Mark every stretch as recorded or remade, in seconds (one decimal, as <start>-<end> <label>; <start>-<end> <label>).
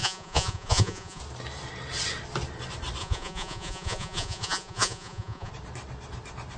0.0-1.2 remade; 1.2-3.0 recorded; 3.0-5.5 remade; 5.5-6.6 recorded